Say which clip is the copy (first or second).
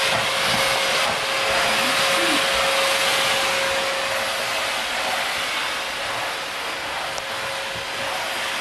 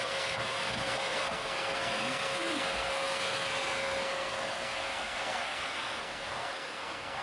second